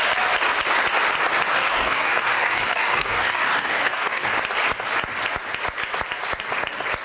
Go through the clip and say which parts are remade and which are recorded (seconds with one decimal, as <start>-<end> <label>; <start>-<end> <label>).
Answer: 0.0-1.5 recorded; 1.5-4.3 remade; 4.3-7.0 recorded